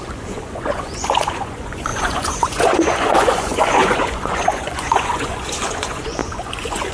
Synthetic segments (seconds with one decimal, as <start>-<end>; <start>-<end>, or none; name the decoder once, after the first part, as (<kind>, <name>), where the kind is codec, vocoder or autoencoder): 0.0-6.9 (vocoder, Vocos)